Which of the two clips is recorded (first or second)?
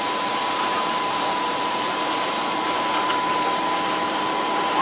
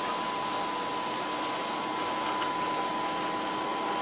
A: second